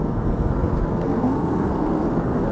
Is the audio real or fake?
fake